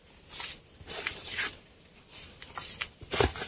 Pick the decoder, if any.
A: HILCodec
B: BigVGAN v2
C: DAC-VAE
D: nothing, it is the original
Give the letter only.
D